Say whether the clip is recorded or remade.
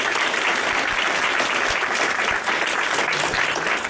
recorded